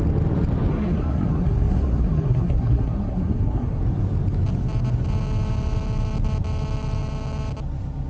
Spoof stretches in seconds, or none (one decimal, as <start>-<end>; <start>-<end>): 0.7-3.8